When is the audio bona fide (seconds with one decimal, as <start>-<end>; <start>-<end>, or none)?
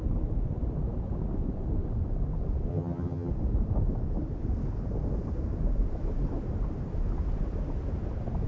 0.0-2.7; 3.3-8.5